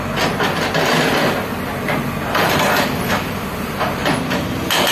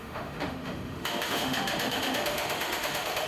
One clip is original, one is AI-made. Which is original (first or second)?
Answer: first